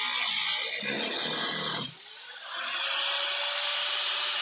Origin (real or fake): real